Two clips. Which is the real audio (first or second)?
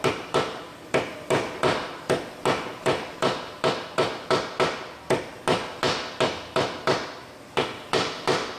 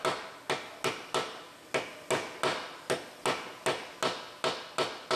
second